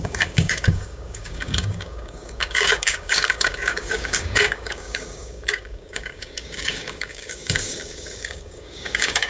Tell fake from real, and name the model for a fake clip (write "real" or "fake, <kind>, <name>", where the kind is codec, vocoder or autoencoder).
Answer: fake, codec, DAC